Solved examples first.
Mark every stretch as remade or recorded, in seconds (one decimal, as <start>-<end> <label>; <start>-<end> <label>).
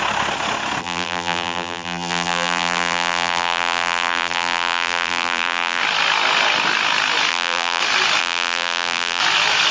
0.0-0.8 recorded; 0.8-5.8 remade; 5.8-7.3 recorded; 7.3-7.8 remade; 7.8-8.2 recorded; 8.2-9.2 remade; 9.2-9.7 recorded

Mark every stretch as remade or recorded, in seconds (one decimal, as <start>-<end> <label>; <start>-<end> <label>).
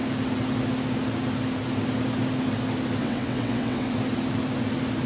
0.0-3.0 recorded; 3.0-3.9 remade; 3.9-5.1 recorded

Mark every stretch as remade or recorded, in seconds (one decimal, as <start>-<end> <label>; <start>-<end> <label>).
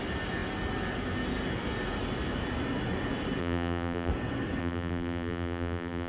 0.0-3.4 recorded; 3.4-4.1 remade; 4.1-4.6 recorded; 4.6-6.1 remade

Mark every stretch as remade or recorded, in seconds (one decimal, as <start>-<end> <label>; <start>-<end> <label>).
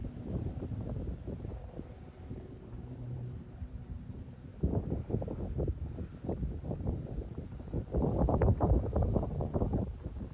0.0-1.5 remade; 1.5-2.5 recorded; 2.5-4.5 remade; 4.5-6.2 recorded; 6.2-10.3 remade